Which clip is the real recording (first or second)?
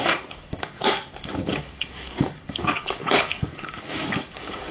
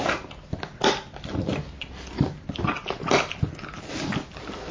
second